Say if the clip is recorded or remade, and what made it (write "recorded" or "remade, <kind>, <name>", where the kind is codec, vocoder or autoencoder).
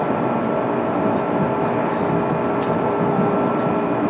recorded